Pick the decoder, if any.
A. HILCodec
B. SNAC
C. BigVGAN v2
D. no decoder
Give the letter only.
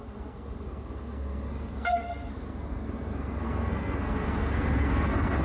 B